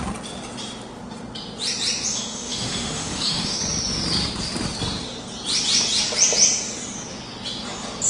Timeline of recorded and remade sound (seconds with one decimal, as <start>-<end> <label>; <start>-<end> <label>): 0.0-2.1 recorded; 2.1-3.6 remade; 3.6-8.1 recorded